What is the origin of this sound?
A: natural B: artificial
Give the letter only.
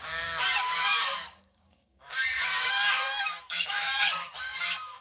B